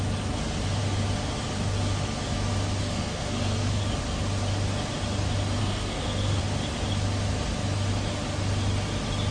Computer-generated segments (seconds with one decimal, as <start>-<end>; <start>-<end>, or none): 2.8-3.8; 5.6-6.4